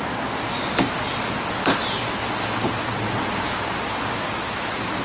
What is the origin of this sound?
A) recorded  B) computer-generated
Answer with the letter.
A